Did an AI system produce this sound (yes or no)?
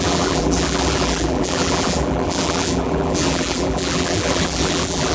yes